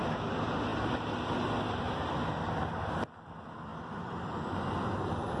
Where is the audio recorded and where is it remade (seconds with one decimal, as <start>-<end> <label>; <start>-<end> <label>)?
0.0-5.4 recorded